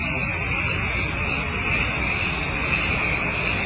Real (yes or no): yes